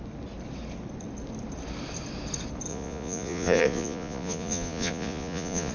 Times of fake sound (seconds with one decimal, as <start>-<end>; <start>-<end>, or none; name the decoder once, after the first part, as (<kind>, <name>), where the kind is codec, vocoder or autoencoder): 2.7-5.7 (vocoder, Vocos)